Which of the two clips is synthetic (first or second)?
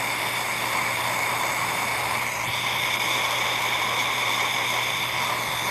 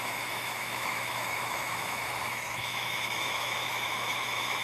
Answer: second